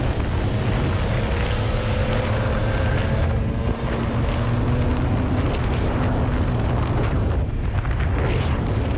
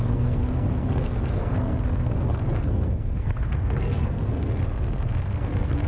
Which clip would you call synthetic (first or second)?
second